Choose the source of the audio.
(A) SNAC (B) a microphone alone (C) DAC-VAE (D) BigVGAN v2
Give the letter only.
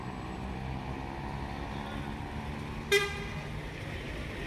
B